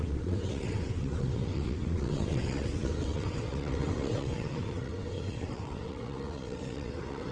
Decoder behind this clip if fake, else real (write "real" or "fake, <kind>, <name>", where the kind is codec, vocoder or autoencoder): fake, vocoder, WaveNeXt